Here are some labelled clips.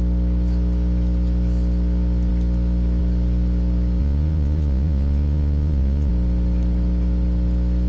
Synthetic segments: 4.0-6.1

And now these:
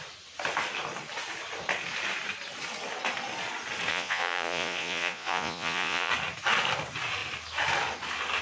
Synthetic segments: 3.9-6.1

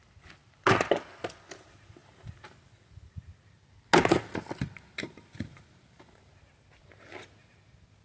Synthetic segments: none

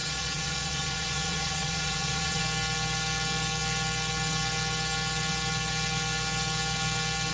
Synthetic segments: 0.0-2.4